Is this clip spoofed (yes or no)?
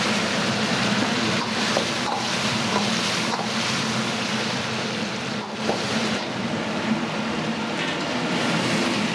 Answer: yes